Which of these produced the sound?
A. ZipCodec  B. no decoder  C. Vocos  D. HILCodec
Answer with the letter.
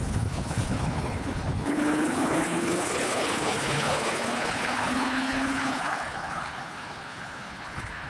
D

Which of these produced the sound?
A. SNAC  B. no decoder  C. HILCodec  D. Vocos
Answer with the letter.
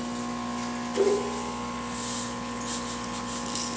B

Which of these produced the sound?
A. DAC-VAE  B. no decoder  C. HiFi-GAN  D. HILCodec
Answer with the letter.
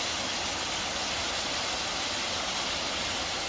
B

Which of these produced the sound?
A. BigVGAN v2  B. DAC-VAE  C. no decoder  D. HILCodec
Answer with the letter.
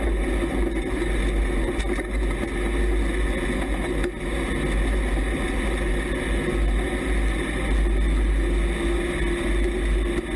C